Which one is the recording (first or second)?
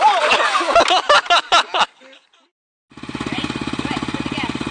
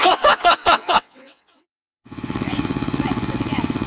first